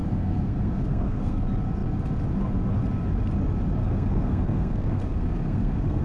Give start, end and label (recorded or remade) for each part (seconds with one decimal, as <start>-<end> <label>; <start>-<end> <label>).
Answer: 0.0-1.4 remade; 1.4-3.8 recorded; 3.8-6.0 remade